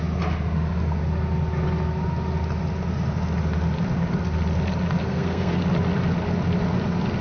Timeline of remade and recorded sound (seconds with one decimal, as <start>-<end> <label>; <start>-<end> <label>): 0.0-5.0 recorded; 5.0-5.6 remade; 5.6-7.2 recorded